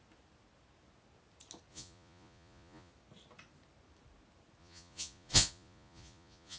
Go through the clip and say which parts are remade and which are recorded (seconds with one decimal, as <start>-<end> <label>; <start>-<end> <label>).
0.0-1.7 recorded; 1.7-2.9 remade; 2.9-4.6 recorded; 4.6-6.6 remade